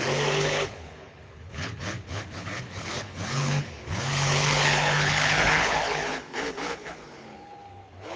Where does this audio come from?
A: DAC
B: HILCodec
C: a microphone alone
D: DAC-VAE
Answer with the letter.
B